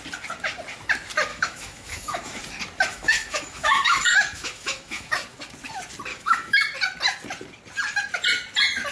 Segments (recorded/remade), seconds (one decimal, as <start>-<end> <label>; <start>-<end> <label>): 0.0-1.3 recorded; 1.3-2.4 remade; 2.4-2.9 recorded; 2.9-5.1 remade; 5.1-6.1 recorded; 6.1-6.6 remade; 6.6-8.9 recorded